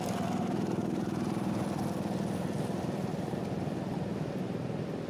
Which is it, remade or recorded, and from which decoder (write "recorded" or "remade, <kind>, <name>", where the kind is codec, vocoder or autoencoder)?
recorded